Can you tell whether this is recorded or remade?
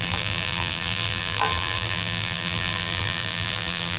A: remade